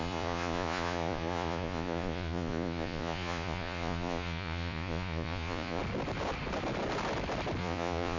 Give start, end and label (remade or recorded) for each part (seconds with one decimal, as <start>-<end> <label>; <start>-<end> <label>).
0.0-5.8 remade; 5.8-7.6 recorded; 7.6-8.2 remade